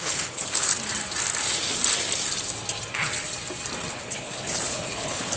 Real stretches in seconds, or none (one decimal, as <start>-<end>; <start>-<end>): 0.7-3.9